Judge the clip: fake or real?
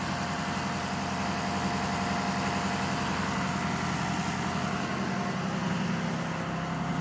real